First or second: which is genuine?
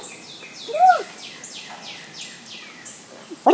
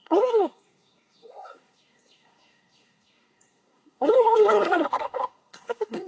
first